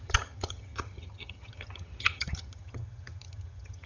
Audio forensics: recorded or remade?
remade